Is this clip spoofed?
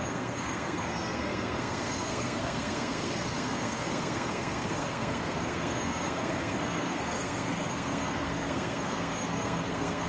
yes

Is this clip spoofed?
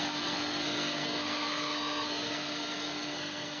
yes